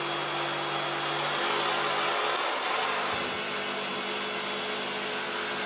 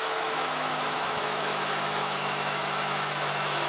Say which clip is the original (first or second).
first